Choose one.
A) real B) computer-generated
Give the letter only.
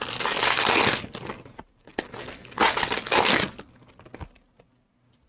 A